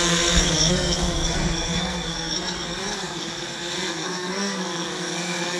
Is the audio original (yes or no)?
no